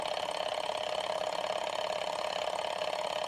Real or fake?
real